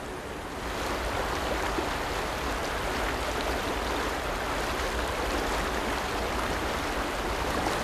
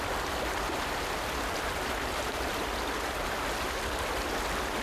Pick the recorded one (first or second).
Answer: first